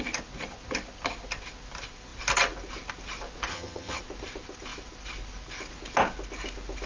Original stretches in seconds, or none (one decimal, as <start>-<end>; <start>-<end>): 0.0-3.5; 4.0-6.9